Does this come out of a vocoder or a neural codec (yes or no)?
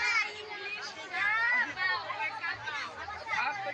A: no